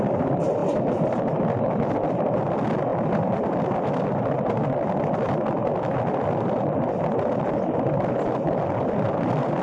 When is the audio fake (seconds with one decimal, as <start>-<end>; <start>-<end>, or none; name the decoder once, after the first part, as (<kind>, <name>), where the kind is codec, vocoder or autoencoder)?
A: none